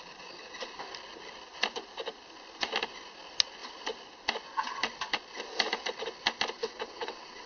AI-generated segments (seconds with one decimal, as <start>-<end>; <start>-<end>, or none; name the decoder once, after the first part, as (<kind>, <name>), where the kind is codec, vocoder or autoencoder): 6.6-7.5 (vocoder, WaveNeXt)